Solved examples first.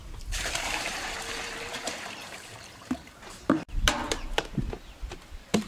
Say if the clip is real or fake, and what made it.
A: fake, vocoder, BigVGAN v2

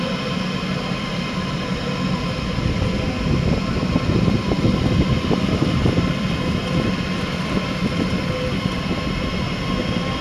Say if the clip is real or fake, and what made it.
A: real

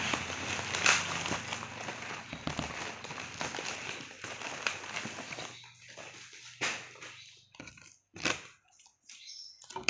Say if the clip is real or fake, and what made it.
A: real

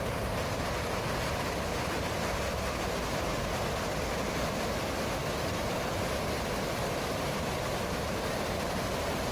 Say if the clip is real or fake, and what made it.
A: real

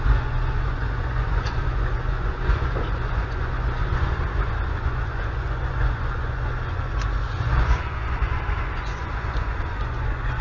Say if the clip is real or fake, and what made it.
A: fake, vocoder, Vocos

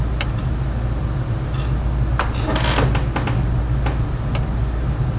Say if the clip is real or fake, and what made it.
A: real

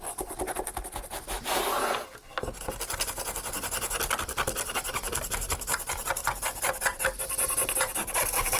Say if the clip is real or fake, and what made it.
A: real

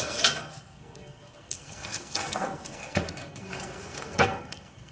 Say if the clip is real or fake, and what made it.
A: fake, codec, SNAC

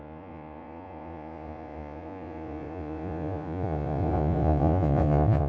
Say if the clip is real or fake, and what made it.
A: fake, vocoder, Vocos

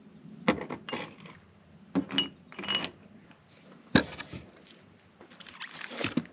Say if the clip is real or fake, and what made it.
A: real